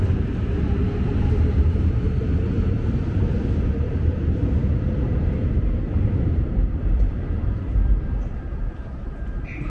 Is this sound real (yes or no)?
no